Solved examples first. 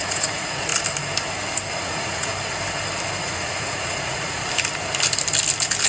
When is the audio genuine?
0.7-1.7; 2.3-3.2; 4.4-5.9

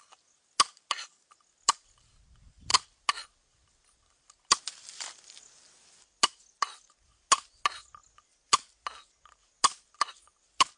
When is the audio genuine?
0.0-10.8

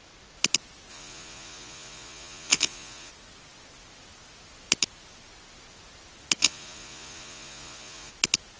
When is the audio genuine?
0.0-0.9; 3.1-6.4; 8.1-8.6